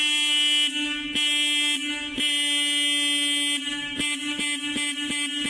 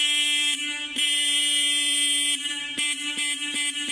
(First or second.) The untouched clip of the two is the first